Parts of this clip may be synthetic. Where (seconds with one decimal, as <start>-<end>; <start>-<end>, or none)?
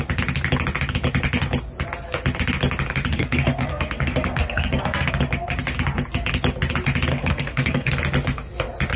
3.1-5.1; 7.1-7.9